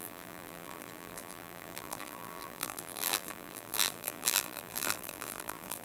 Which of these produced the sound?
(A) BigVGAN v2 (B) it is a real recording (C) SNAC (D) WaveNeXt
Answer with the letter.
A